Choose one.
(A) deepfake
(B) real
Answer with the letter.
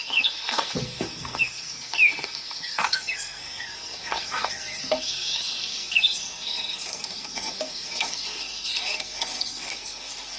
A